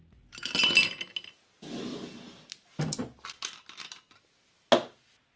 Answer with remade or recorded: recorded